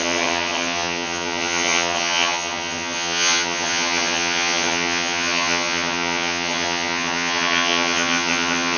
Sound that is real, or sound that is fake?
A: fake